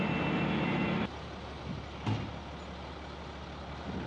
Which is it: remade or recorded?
recorded